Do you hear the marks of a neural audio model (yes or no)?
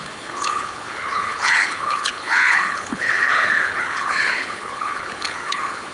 yes